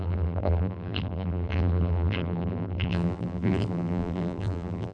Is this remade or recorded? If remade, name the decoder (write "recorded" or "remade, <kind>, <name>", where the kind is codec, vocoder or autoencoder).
remade, vocoder, BigVGAN v2